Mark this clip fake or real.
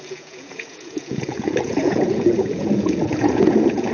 fake